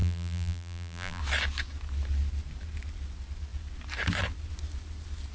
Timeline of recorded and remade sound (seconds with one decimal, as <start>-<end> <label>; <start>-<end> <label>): 0.0-1.2 remade; 1.2-5.3 recorded

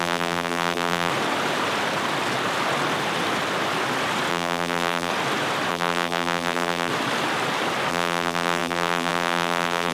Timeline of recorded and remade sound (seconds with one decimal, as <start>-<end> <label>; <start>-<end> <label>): 0.0-1.1 remade; 1.1-4.3 recorded; 4.3-5.1 remade; 5.1-5.7 recorded; 5.7-6.9 remade; 6.9-7.9 recorded; 7.9-9.9 remade